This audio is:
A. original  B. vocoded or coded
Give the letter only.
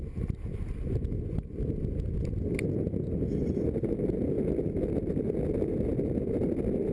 A